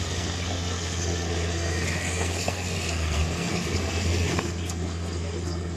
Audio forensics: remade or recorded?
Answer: remade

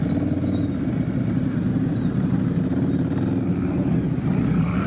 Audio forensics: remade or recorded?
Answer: recorded